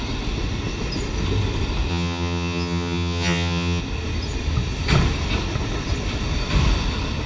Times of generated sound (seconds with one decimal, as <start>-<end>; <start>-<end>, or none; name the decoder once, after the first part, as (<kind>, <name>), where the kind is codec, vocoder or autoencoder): 1.9-3.8 (vocoder, HiFi-GAN)